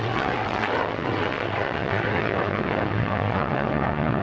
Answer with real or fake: fake